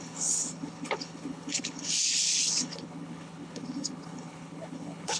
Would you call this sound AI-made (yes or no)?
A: yes